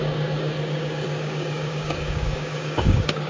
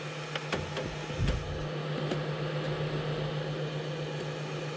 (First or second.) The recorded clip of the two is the second